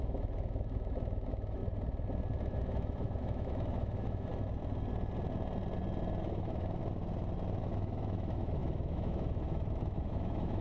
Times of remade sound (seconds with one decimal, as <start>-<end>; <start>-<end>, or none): 0.0-1.6; 2.4-4.3; 6.2-6.8; 7.6-10.6